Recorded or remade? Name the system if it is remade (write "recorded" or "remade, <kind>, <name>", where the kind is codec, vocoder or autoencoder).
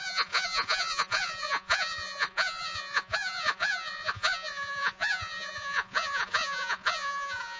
remade, vocoder, Vocos